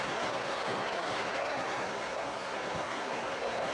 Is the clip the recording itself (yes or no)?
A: no